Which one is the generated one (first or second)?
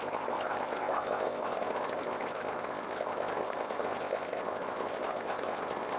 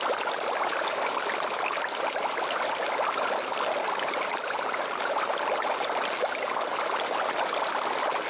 first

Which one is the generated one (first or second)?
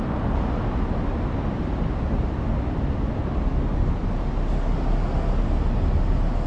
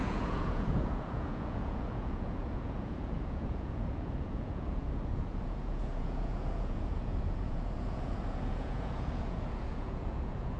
second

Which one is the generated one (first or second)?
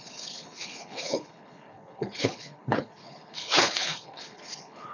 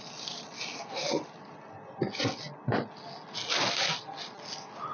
first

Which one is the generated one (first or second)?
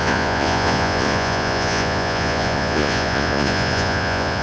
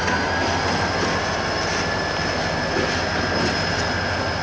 first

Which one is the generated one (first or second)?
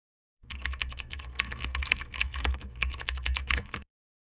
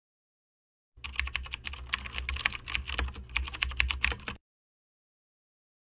first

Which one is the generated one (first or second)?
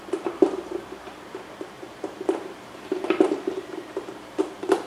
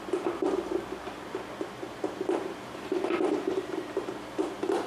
first